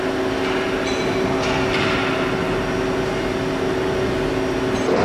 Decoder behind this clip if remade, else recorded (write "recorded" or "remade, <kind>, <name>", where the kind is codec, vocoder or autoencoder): recorded